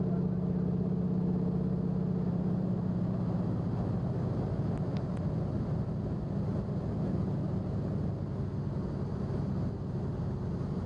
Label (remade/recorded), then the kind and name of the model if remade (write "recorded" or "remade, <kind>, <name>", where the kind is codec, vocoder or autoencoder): recorded